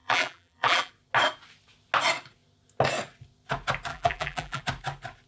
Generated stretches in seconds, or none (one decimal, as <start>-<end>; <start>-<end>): 0.0-0.9; 3.9-4.6